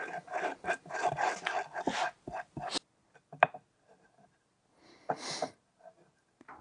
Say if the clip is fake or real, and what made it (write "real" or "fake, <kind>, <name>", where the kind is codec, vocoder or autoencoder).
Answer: real